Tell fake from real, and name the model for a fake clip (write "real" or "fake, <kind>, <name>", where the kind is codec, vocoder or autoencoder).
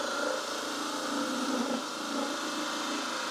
real